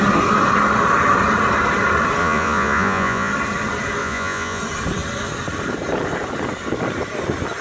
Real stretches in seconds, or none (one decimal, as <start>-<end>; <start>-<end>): 0.0-2.2; 3.3-4.0; 4.6-7.6